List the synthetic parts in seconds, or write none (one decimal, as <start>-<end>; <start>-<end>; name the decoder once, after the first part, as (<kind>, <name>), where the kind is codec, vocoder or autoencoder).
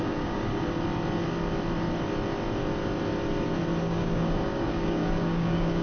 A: 0.0-0.5 (codec, DAC); 3.8-5.8